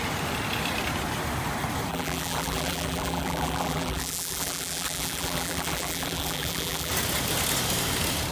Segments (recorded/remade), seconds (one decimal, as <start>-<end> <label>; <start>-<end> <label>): 0.0-1.9 recorded; 1.9-6.9 remade; 6.9-8.3 recorded